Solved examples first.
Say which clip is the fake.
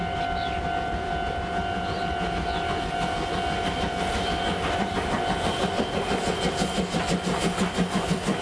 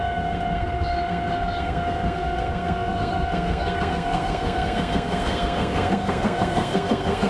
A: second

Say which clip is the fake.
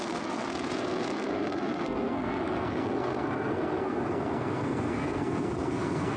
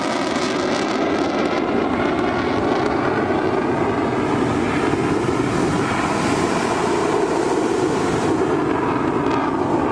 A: first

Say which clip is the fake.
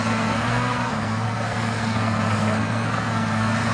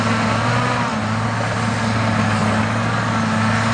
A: first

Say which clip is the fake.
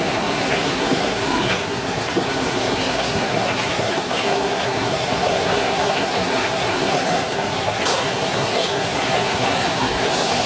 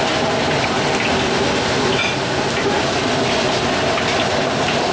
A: first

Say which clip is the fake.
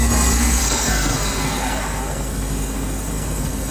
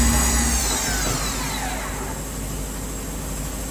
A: first